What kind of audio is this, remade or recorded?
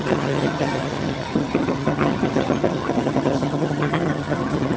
remade